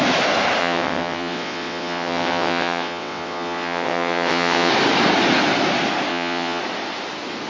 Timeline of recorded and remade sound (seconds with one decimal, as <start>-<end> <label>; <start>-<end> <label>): 0.0-0.6 recorded; 0.6-4.7 remade; 4.7-6.1 recorded; 6.1-6.6 remade; 6.6-7.5 recorded